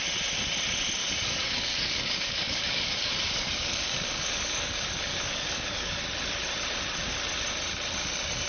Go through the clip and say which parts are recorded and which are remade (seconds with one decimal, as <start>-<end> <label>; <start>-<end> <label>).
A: 0.0-1.0 recorded; 1.0-6.0 remade; 6.0-8.5 recorded

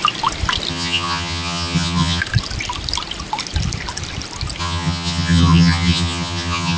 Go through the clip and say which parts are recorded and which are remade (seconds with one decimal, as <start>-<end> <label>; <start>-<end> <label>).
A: 0.0-0.7 recorded; 0.7-2.2 remade; 2.2-4.6 recorded; 4.6-6.8 remade

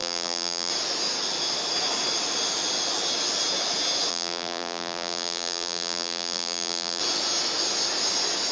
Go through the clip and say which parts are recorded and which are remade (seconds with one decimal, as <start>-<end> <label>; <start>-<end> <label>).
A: 0.0-0.7 remade; 0.7-4.1 recorded; 4.1-7.0 remade; 7.0-8.5 recorded

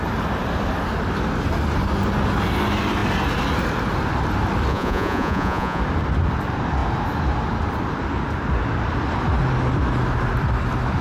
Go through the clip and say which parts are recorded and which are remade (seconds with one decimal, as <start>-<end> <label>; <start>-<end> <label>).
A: 0.0-4.7 recorded; 4.7-5.8 remade; 5.8-11.0 recorded

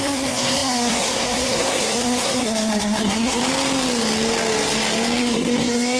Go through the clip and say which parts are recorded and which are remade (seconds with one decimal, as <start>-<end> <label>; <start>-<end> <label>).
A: 0.0-3.4 remade; 3.4-5.2 recorded; 5.2-6.0 remade

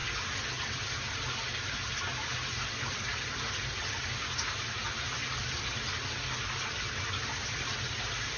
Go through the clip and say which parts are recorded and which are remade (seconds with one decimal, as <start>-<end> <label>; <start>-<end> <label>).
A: 0.0-8.4 recorded

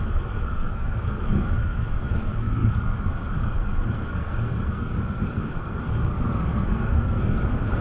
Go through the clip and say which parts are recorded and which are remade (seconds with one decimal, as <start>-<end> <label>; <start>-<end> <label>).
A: 0.0-7.8 remade